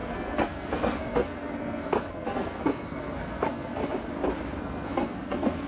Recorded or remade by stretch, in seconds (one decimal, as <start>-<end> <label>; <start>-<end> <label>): 0.0-3.8 remade; 3.8-4.6 recorded; 4.6-5.7 remade